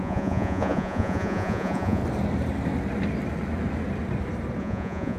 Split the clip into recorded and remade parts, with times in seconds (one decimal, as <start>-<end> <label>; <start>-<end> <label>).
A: 0.0-2.0 remade; 2.0-4.6 recorded; 4.6-5.2 remade